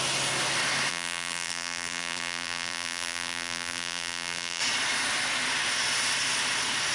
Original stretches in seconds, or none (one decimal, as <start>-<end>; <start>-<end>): 0.0-0.9; 4.6-6.9